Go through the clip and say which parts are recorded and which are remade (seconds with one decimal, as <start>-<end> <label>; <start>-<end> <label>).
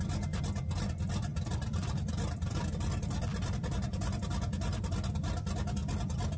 0.0-1.3 recorded; 1.3-2.7 remade; 2.7-3.3 recorded; 3.3-4.2 remade; 4.2-6.4 recorded